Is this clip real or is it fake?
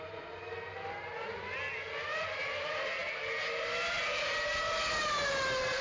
real